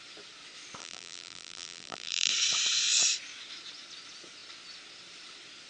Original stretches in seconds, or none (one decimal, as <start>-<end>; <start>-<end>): 0.0-0.8; 2.3-5.7